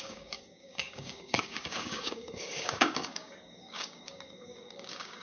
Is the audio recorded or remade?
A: remade